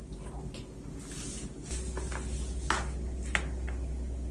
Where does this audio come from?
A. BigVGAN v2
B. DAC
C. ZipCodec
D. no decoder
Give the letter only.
D